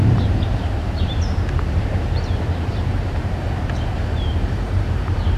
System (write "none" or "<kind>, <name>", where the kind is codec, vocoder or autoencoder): vocoder, BigVGAN v2